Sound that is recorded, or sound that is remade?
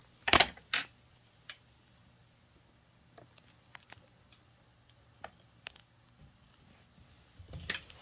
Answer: recorded